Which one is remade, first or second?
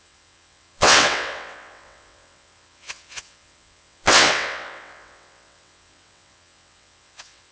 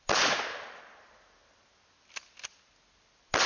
first